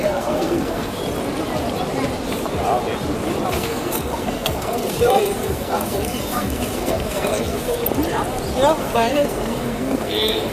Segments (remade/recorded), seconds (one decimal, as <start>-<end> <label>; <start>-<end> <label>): 0.0-1.0 remade; 1.0-3.5 recorded; 3.5-7.8 remade; 7.8-8.8 recorded; 8.8-10.5 remade